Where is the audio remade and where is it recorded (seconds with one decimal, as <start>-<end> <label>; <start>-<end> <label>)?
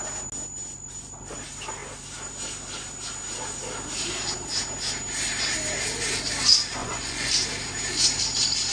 0.0-6.8 recorded; 6.8-7.3 remade; 7.3-8.7 recorded